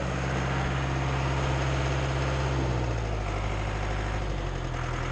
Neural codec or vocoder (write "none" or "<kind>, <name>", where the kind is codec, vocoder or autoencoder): none